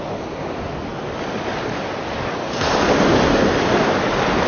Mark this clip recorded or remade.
recorded